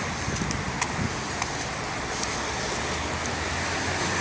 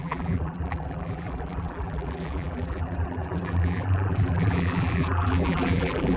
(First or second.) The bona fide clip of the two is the first